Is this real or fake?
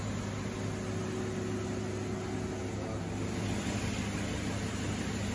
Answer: real